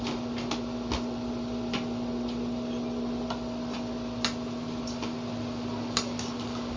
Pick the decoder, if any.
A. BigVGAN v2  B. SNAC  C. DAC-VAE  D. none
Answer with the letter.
D